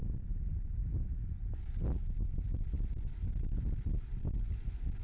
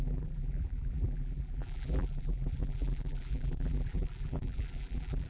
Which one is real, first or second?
first